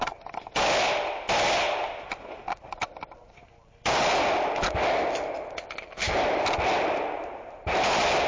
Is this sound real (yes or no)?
yes